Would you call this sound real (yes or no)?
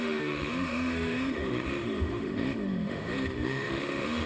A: no